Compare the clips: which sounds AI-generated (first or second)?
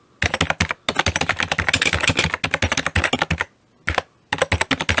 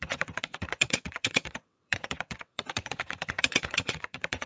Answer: second